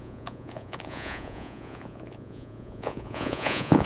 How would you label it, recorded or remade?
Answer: remade